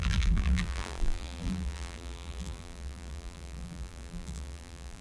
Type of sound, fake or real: fake